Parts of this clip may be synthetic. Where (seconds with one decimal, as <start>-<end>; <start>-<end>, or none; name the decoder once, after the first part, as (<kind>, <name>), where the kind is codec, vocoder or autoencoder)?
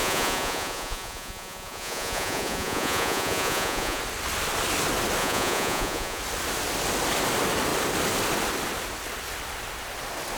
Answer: 0.0-4.0 (vocoder, Vocos); 5.2-6.2